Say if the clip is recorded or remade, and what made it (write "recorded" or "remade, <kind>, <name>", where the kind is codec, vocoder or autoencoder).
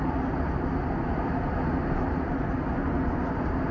recorded